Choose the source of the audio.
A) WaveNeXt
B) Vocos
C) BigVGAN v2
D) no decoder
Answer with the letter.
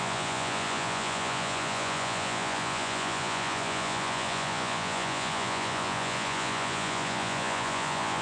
B